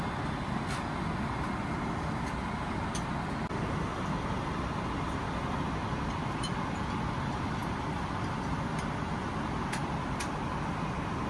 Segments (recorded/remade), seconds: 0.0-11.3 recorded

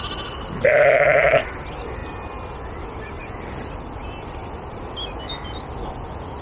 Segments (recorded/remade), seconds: 0.0-6.4 recorded